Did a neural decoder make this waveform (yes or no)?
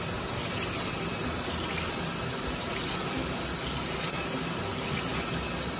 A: no